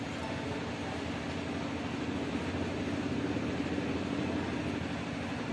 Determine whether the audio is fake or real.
real